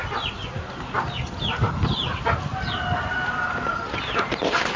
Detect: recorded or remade recorded